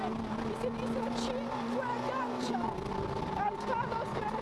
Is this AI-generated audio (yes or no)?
no